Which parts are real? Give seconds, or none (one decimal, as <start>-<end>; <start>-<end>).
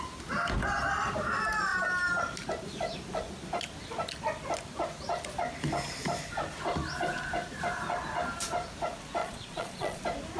0.0-9.2; 10.0-10.4